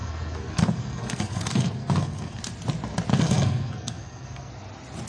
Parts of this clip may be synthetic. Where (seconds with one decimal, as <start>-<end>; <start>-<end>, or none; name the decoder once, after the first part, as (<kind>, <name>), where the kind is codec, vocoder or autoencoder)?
0.0-2.4 (codec, SNAC); 3.1-4.5